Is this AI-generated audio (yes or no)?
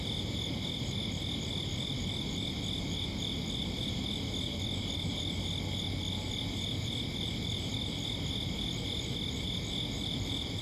no